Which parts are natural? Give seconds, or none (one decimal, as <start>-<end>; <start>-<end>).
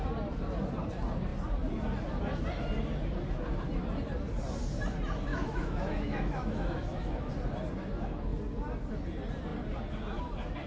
0.0-5.3; 7.3-10.7